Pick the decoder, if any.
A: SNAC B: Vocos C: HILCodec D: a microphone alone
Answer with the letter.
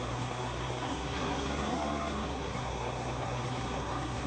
A